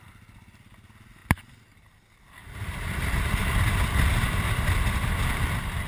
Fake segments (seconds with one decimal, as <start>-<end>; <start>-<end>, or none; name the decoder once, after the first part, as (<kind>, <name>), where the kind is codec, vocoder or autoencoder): 2.4-3.4 (vocoder, BigVGAN v2)